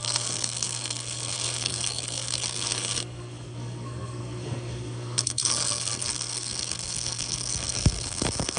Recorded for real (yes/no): no